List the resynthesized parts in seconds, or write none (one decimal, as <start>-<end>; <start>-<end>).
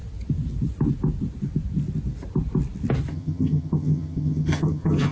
3.1-5.1